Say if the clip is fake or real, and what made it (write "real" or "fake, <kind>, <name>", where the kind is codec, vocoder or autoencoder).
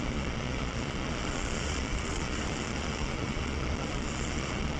fake, vocoder, Vocos